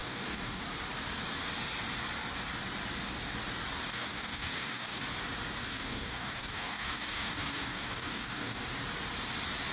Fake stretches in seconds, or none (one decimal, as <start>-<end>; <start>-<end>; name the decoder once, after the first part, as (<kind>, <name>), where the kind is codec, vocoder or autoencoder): 0.0-0.6 (codec, DAC); 3.9-5.0; 5.6-8.6